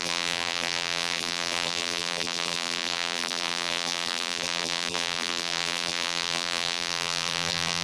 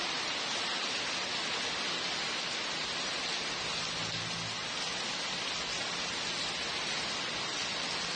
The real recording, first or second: second